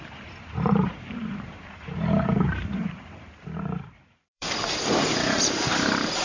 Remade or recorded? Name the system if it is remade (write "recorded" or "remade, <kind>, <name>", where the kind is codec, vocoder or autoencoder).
remade, vocoder, BigVGAN v2